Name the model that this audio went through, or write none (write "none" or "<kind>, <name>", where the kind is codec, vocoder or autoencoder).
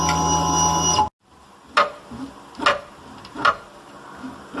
none